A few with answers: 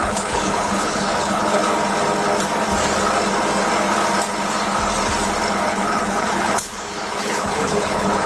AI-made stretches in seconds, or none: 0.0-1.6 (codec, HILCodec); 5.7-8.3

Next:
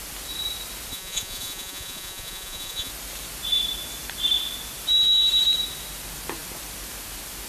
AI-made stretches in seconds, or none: 0.9-2.9 (vocoder, Vocos)

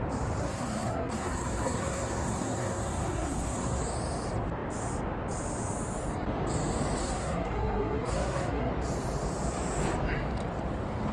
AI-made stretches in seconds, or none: 0.4-3.8 (codec, SNAC); 7.0-8.7